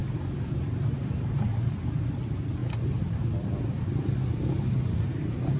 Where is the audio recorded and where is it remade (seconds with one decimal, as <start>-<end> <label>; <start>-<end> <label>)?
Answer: 0.0-2.6 remade; 2.6-3.7 recorded; 3.7-5.6 remade